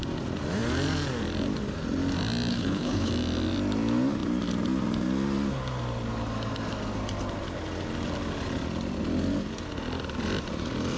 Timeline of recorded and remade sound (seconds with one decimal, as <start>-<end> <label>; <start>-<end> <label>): 0.0-2.5 recorded; 2.5-3.1 remade; 3.1-11.0 recorded